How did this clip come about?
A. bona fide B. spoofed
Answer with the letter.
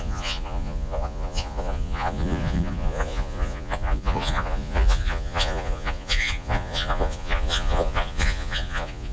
B